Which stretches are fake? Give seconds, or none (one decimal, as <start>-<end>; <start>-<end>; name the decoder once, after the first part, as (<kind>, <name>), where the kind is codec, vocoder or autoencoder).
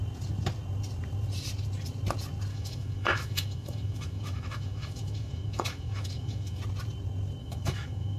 2.5-6.6 (autoencoder, DAC-VAE); 7.4-8.2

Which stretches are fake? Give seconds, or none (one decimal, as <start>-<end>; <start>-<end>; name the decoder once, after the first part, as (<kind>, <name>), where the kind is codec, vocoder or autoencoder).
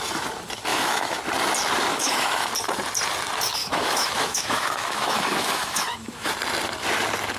0.7-1.2 (autoencoder, DAC-VAE); 1.9-2.5; 3.6-6.3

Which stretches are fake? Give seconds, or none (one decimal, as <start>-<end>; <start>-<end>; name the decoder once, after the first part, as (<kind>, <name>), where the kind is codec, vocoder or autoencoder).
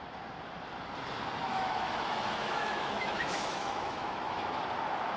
1.5-4.6 (autoencoder, DAC-VAE)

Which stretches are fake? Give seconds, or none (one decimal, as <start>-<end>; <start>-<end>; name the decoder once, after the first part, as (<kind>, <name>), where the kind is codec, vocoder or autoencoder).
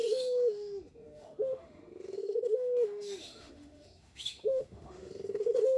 0.0-5.8 (autoencoder, DAC-VAE)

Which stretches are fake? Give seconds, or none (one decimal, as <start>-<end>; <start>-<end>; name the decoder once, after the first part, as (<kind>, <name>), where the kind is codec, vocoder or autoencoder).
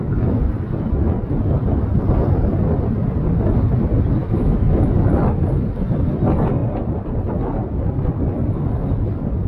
4.2-4.8 (autoencoder, DAC-VAE)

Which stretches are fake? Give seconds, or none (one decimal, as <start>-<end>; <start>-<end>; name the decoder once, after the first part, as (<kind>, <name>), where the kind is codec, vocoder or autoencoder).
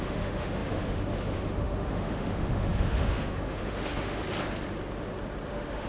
0.0-4.2 (autoencoder, DAC-VAE); 5.5-5.9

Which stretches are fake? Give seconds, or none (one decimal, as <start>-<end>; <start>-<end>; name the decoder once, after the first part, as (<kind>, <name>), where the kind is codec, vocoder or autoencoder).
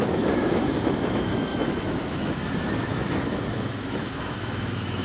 0.0-5.0 (autoencoder, DAC-VAE)